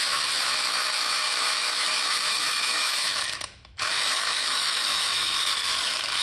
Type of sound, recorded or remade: remade